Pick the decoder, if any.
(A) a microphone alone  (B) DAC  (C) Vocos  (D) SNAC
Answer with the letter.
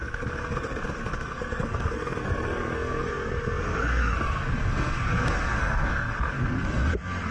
D